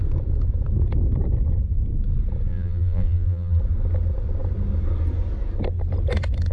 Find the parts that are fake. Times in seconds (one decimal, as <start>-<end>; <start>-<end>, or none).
2.5-3.6